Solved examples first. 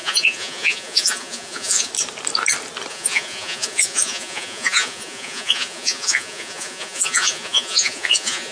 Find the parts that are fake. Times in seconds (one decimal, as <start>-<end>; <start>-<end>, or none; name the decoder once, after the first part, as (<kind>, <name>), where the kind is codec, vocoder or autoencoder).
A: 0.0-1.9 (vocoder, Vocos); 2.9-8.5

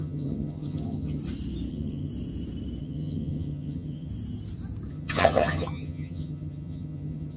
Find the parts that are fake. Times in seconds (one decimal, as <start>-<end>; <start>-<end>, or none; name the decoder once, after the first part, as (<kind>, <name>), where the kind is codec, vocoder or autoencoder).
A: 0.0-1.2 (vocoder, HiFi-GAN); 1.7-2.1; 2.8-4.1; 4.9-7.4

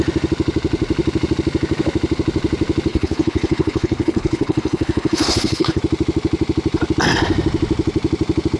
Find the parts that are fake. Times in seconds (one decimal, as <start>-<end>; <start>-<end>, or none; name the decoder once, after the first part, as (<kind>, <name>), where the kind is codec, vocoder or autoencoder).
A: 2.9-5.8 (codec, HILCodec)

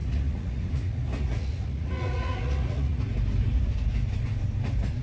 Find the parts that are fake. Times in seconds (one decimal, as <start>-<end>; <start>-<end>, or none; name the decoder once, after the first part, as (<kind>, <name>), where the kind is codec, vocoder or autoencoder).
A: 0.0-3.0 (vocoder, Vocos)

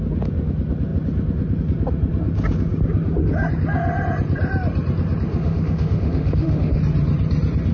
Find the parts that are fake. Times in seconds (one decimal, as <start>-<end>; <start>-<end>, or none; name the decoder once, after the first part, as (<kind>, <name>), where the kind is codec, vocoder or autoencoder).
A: 5.3-6.8 (autoencoder, DAC-VAE)

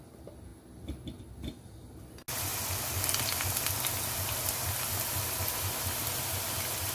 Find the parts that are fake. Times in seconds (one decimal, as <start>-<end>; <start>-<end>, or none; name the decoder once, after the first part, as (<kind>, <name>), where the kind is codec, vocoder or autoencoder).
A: none